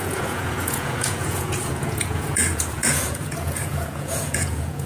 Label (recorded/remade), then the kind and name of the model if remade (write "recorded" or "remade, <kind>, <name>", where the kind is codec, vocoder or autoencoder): remade, vocoder, Vocos